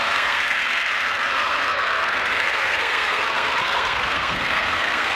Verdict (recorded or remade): remade